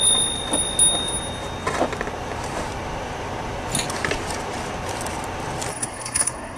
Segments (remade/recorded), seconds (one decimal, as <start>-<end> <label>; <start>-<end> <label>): 0.0-5.7 recorded; 5.7-6.6 remade